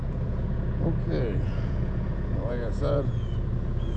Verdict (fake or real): fake